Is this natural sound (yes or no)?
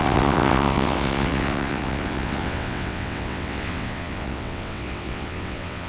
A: no